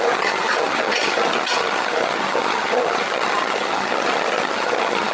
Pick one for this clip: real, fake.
fake